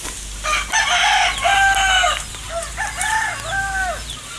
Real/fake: real